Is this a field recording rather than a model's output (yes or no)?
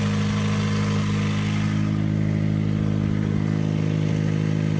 yes